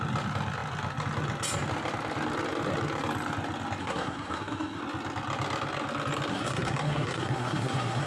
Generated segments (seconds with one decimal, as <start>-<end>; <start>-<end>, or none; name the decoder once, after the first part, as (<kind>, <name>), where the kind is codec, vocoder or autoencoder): 3.8-4.8 (codec, SNAC); 6.3-8.1